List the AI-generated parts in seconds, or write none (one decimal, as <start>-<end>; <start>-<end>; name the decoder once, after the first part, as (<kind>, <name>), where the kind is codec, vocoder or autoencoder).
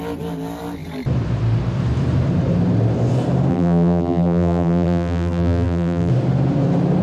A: 3.5-6.1 (vocoder, BigVGAN v2)